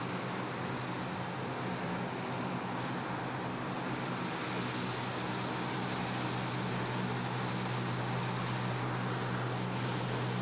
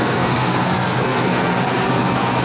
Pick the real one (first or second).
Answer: first